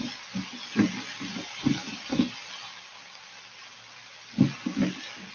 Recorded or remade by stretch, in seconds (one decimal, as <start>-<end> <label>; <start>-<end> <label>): 0.0-5.3 recorded